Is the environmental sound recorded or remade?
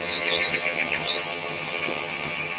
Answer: remade